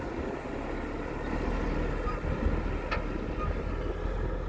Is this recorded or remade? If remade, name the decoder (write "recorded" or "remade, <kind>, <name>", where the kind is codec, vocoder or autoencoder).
recorded